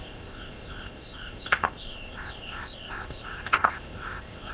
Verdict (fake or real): fake